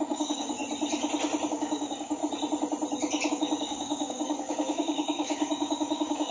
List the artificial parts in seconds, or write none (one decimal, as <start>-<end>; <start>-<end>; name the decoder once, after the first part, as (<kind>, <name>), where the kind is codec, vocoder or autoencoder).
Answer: 0.0-0.6 (codec, DAC); 1.5-2.2; 3.3-6.3